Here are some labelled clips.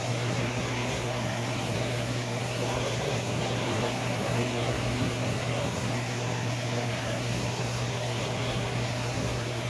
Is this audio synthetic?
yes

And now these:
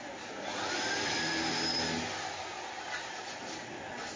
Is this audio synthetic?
no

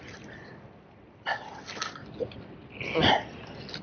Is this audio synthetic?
no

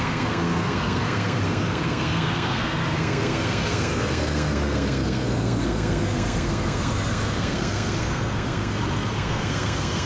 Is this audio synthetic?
yes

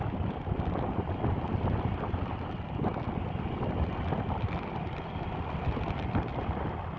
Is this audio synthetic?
no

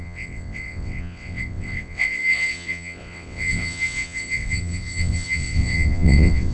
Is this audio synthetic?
yes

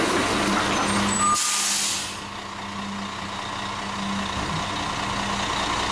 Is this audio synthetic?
no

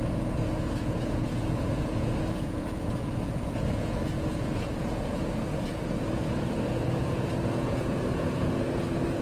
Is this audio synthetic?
yes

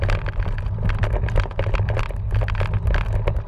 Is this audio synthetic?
no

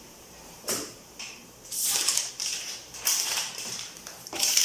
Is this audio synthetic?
yes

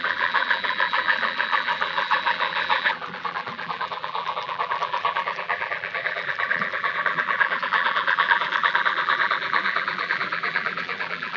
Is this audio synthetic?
yes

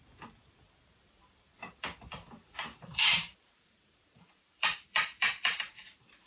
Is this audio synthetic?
yes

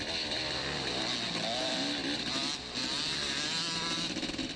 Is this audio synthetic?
no